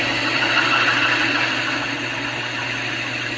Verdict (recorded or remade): recorded